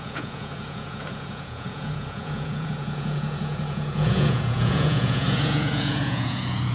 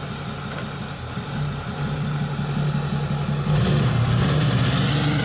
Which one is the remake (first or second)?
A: first